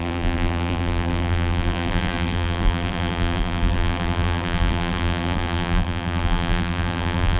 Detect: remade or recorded remade